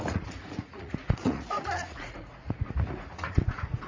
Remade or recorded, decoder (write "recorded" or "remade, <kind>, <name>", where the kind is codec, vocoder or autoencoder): remade, vocoder, Vocos